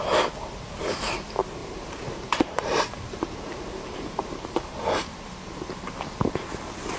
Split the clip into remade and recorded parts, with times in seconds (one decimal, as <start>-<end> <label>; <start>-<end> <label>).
0.0-1.6 recorded; 1.6-5.3 remade; 5.3-7.0 recorded